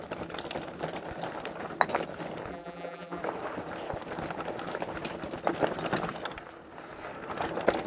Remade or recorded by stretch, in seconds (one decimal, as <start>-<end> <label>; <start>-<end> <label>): 0.0-2.5 recorded; 2.5-3.2 remade; 3.2-7.9 recorded